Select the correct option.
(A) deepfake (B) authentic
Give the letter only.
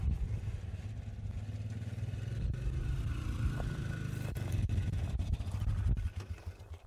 B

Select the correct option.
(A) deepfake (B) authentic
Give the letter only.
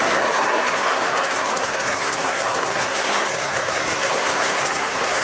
A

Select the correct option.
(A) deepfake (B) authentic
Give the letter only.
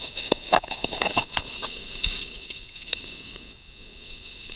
A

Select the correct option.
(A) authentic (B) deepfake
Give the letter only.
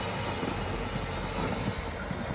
A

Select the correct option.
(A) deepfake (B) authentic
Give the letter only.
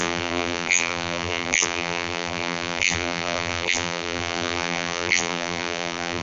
A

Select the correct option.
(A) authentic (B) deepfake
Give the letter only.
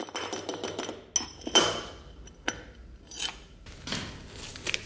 A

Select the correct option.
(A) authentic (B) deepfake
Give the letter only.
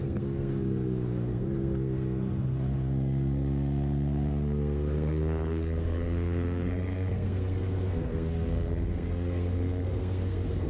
B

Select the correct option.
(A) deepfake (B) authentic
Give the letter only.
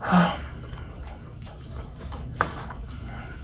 A